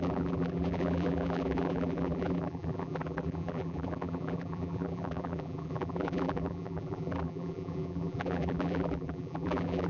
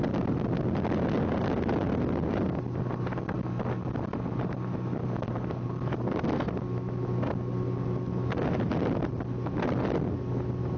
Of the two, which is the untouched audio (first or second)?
second